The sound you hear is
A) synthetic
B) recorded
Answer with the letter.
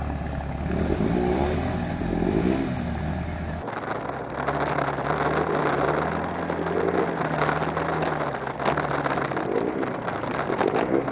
B